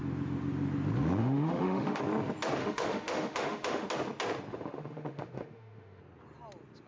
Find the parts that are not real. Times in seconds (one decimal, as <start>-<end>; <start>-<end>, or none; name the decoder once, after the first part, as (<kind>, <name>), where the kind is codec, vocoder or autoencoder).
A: 1.2-2.0 (autoencoder, DAC-VAE); 2.6-3.9; 4.5-6.0